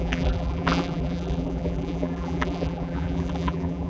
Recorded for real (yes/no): no